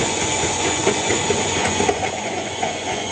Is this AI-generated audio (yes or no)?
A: yes